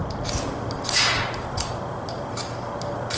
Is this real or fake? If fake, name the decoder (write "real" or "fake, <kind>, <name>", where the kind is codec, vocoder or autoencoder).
real